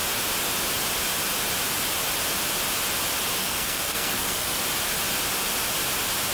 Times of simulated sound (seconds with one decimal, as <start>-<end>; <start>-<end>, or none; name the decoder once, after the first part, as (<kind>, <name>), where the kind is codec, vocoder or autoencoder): 3.4-4.6 (codec, SNAC)